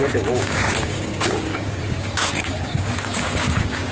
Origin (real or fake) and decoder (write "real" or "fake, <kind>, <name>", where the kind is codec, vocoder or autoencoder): fake, codec, DAC